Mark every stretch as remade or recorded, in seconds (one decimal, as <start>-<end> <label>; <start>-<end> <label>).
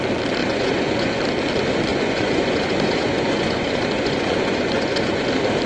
0.0-0.4 recorded; 0.4-1.2 remade; 1.2-1.9 recorded; 1.9-5.3 remade; 5.3-5.7 recorded